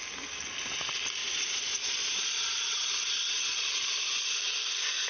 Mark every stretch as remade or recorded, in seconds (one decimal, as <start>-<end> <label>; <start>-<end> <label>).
0.0-1.2 recorded; 1.2-4.3 remade; 4.3-5.1 recorded